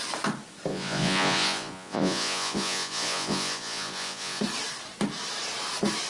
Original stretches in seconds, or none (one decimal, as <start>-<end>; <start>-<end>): 0.0-0.7; 4.4-6.1